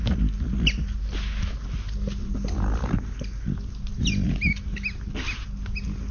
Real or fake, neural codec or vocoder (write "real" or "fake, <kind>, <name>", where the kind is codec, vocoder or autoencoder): real